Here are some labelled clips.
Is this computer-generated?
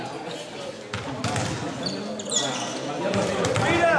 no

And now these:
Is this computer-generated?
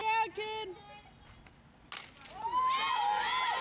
no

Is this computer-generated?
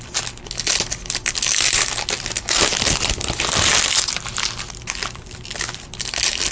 no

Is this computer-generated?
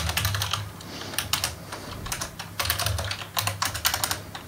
no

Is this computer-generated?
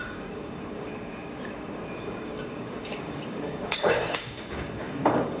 yes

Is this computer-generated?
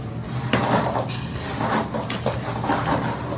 no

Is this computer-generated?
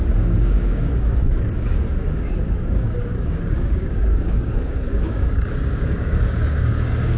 yes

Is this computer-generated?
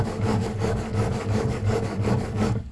yes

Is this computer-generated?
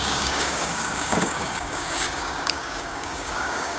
yes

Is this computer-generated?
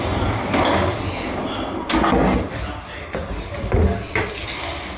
no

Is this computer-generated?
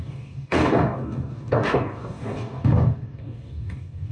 yes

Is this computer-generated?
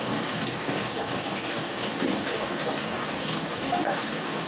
yes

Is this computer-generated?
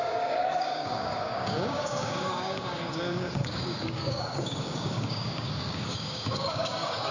yes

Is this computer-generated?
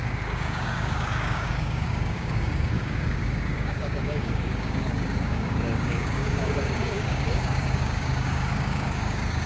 yes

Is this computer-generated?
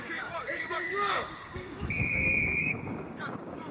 yes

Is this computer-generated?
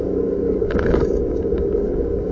yes